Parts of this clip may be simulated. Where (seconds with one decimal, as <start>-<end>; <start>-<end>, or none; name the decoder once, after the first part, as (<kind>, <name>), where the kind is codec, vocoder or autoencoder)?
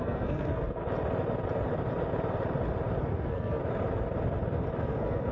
0.0-0.8 (codec, SNAC); 3.0-3.6; 4.8-5.3